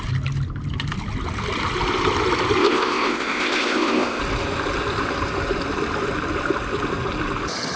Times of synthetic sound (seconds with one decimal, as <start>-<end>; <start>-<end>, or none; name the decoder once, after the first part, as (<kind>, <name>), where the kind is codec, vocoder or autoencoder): 2.6-4.2 (codec, ZipCodec)